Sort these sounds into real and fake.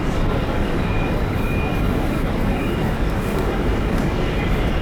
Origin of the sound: fake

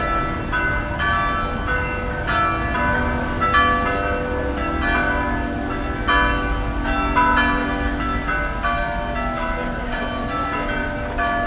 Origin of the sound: real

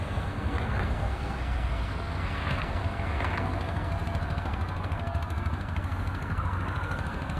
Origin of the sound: fake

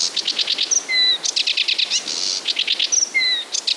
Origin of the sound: real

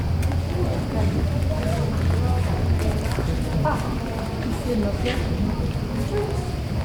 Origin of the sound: real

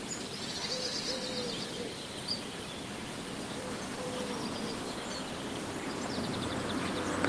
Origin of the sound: real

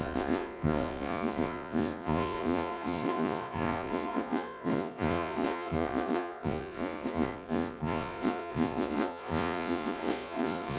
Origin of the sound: fake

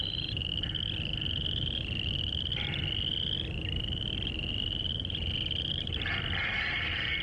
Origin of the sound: real